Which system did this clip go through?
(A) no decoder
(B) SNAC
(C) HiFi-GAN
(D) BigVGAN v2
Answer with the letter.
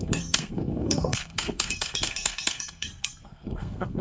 B